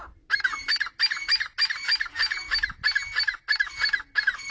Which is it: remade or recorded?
recorded